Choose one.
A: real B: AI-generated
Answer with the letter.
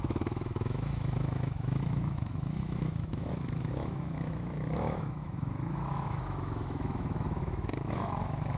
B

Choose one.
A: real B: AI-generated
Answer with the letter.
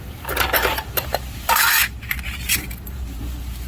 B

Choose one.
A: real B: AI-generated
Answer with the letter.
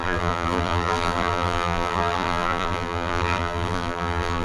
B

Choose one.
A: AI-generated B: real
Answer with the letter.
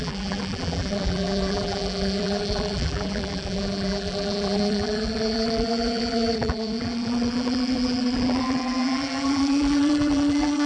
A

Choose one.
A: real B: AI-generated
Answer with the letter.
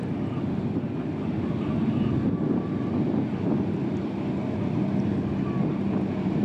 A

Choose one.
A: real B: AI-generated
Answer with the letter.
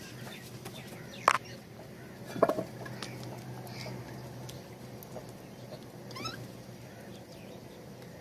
A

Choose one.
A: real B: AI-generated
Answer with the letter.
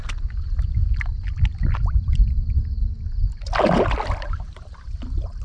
A